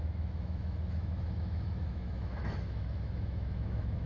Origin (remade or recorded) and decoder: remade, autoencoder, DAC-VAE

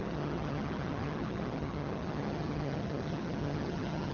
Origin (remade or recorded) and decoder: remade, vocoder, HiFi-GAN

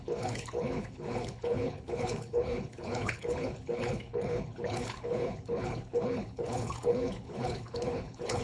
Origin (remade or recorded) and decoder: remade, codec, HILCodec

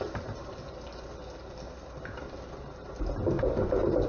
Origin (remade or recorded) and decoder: recorded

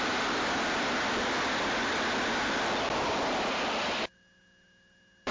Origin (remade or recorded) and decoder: recorded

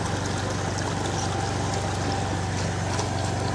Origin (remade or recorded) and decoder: recorded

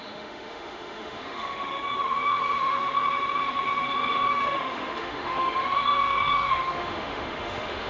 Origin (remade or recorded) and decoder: remade, autoencoder, DAC-VAE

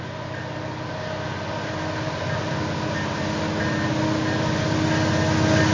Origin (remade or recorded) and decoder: recorded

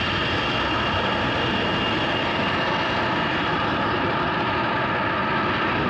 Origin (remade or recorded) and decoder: recorded